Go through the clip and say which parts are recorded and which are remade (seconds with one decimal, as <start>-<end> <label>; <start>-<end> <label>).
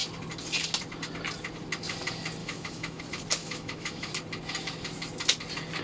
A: 0.0-2.4 recorded; 2.4-3.0 remade; 3.0-3.4 recorded; 3.4-4.1 remade; 4.1-5.8 recorded